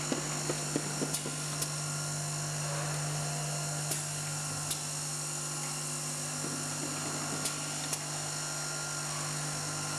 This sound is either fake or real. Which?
real